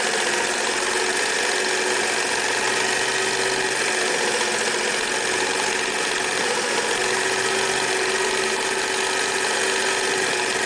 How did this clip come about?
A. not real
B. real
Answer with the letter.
B